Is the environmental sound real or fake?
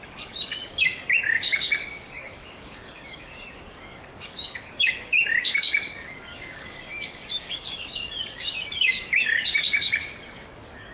fake